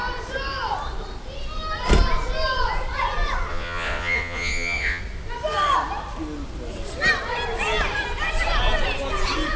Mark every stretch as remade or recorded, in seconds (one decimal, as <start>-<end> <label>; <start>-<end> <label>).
0.0-3.5 recorded; 3.5-5.0 remade; 5.0-9.6 recorded